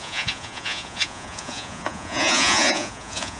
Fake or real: fake